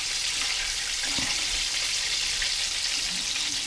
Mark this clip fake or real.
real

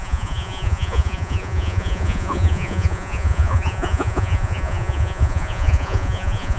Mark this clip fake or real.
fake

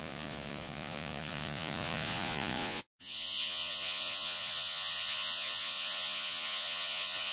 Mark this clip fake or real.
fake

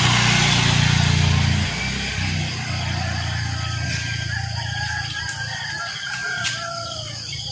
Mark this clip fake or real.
real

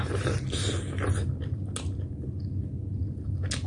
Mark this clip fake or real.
real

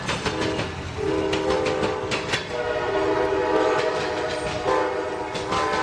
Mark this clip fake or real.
real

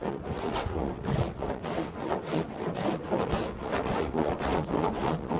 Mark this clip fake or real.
fake